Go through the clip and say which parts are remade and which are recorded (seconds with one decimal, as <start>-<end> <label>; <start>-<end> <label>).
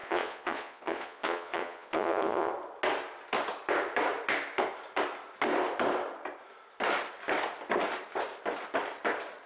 0.0-2.5 remade; 2.5-9.5 recorded